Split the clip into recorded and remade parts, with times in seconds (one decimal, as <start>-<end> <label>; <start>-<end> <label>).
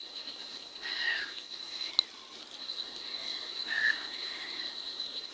0.0-1.9 remade; 1.9-2.6 recorded; 2.6-5.3 remade